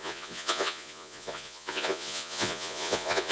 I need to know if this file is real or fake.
fake